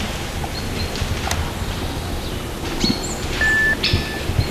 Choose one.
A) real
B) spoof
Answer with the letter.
A